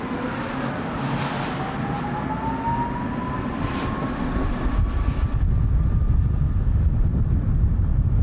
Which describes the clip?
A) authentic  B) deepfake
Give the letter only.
A